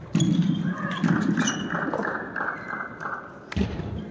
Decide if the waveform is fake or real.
real